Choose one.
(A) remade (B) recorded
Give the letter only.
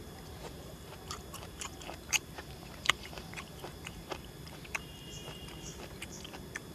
A